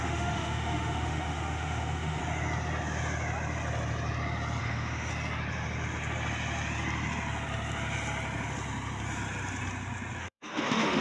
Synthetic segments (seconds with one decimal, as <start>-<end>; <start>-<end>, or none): 0.0-2.2; 4.6-5.1; 10.2-11.0